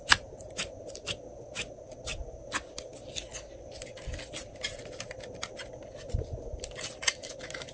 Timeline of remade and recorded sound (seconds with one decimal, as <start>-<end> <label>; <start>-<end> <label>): 0.0-7.7 recorded